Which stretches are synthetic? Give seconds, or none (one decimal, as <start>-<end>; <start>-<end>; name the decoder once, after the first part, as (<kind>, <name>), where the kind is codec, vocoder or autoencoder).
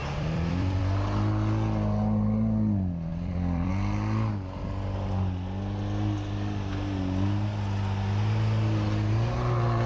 0.0-0.8 (vocoder, BigVGAN v2); 3.1-3.7